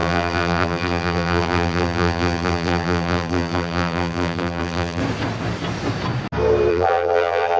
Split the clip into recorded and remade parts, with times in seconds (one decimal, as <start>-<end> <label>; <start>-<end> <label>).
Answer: 0.0-5.0 remade; 5.0-6.7 recorded; 6.7-7.6 remade